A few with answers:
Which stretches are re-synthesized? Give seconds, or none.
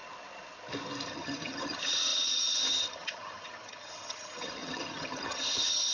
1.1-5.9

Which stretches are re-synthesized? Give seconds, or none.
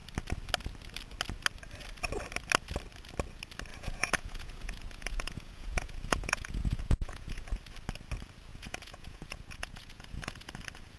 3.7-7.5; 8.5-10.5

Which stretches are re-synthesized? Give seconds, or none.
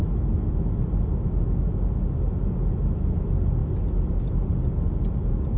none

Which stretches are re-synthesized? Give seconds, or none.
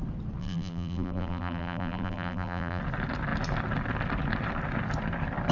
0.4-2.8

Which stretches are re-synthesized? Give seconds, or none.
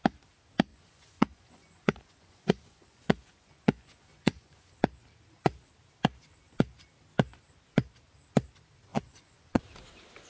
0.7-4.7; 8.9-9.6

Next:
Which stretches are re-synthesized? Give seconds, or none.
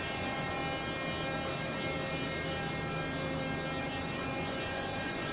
0.0-0.6; 3.8-5.3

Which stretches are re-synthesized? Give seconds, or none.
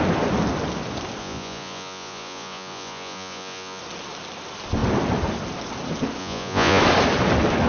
1.2-3.8; 6.2-6.8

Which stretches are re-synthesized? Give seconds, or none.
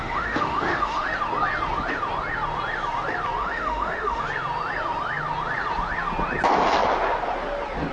0.0-1.1; 3.4-4.2